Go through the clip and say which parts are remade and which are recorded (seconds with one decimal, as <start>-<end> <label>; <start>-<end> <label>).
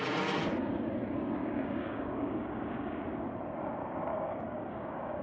0.0-1.4 recorded; 1.4-3.0 remade; 3.0-4.1 recorded; 4.1-5.2 remade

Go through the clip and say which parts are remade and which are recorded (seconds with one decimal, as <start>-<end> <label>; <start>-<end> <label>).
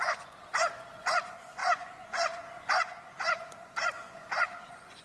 0.0-5.0 remade